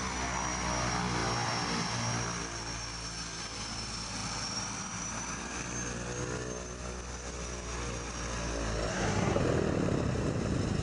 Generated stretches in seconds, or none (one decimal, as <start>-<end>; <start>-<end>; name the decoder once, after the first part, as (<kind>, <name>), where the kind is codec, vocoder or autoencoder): 8.9-9.4 (codec, SNAC)